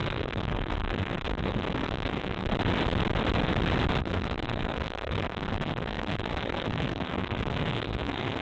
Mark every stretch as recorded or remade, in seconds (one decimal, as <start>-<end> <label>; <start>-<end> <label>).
0.0-2.5 remade; 2.5-4.0 recorded; 4.0-8.4 remade